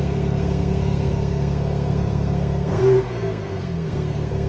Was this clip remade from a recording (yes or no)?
yes